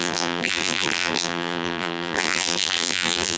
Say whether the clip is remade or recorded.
remade